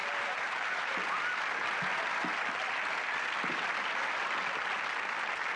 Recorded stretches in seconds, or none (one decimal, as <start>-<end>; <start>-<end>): 0.9-5.6